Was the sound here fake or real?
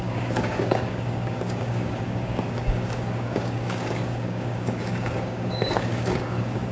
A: fake